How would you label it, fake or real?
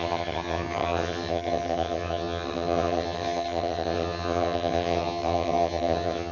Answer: fake